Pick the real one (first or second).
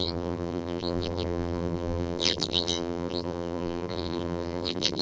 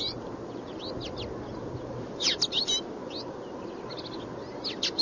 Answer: second